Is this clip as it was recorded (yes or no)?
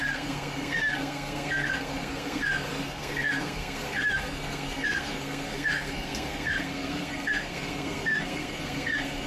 no